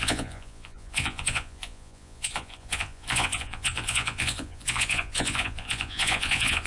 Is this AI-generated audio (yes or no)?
yes